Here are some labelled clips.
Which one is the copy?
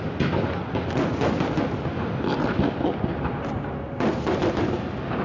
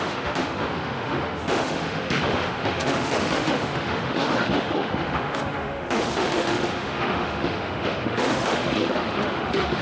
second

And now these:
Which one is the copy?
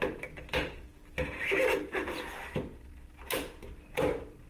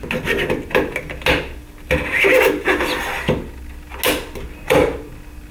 first